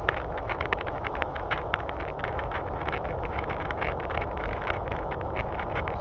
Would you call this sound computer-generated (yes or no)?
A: yes